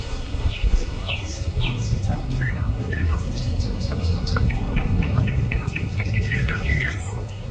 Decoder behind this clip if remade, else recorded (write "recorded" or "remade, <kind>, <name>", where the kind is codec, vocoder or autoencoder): remade, codec, SNAC